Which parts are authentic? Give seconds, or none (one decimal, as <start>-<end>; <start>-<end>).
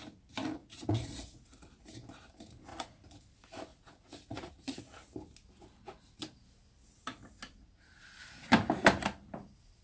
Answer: 0.0-0.6; 1.4-2.7; 3.2-3.7; 4.8-9.8